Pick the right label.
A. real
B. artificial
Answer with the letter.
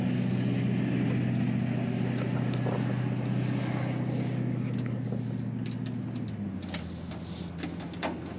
A